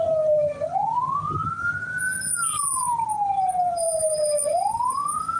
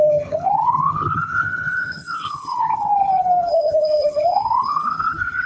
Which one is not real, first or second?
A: second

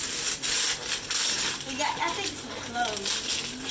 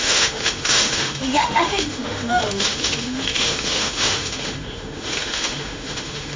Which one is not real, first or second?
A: second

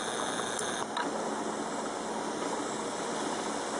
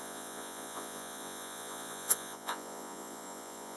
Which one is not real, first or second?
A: second